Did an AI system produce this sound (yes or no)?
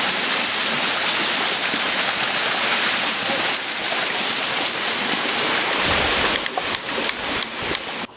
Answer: no